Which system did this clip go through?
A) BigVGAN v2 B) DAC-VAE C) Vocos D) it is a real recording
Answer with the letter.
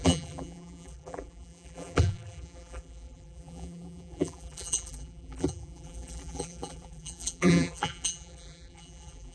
A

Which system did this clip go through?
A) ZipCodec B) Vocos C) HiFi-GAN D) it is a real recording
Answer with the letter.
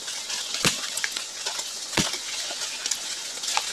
B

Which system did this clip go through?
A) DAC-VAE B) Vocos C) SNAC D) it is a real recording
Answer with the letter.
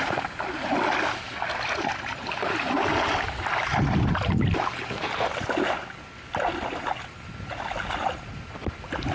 D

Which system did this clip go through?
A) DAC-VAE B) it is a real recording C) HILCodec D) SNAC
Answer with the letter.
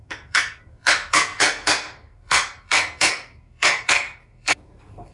D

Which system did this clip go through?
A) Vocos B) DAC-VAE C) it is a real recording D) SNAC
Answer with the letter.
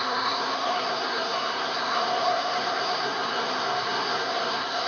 D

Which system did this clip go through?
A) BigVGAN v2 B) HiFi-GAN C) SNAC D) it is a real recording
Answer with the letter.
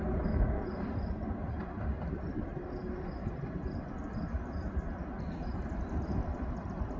D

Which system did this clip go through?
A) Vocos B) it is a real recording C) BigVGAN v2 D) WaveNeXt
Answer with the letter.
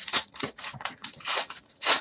A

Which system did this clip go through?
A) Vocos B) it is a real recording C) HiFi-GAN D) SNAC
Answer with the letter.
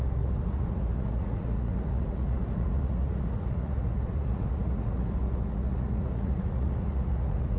A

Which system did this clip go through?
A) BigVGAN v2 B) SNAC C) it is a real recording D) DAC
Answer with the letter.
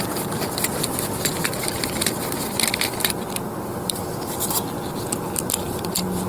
A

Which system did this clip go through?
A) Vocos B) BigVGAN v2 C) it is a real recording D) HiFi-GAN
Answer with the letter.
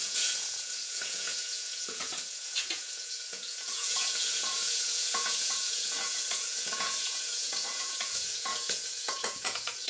A